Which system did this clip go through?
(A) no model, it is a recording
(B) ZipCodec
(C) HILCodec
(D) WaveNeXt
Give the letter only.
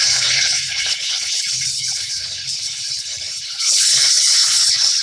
C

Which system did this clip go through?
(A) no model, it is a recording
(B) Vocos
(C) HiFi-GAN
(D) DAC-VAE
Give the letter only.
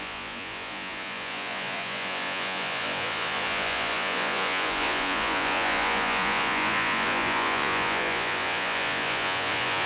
B